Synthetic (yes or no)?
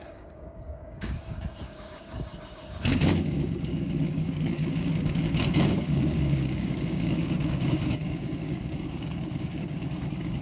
yes